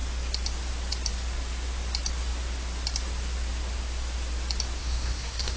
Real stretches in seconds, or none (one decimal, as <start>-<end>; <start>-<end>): 0.0-4.8